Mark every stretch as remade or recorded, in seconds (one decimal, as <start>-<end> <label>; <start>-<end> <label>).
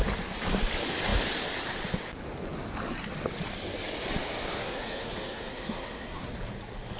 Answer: 0.0-4.6 recorded; 4.6-6.3 remade; 6.3-7.0 recorded